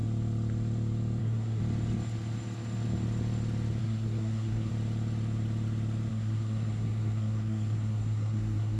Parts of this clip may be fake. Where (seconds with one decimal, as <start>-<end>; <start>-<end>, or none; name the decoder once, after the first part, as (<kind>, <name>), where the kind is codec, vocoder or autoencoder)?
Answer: 1.2-1.6 (codec, SNAC); 3.8-4.7; 6.1-8.8